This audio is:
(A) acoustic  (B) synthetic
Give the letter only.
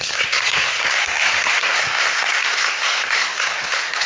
B